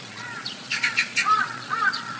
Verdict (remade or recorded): remade